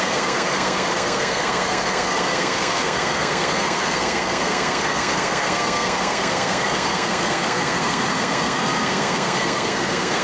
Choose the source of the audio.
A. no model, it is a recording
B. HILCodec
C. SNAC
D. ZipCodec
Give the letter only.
C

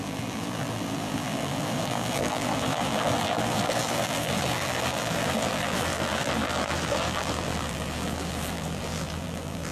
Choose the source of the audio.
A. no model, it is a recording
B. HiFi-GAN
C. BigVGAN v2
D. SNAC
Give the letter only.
C